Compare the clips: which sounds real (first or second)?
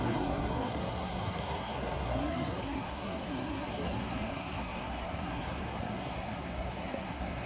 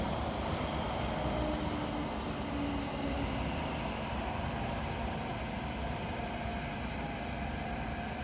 second